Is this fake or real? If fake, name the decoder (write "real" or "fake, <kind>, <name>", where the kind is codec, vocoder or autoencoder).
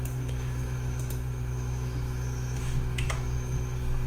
fake, autoencoder, DAC-VAE